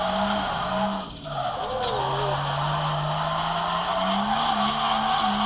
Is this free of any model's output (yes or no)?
yes